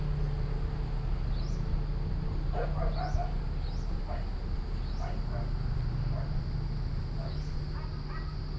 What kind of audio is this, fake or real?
real